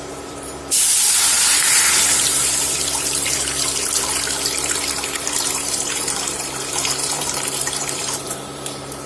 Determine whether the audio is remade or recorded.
remade